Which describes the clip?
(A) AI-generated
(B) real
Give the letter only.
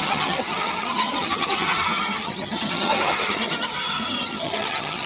A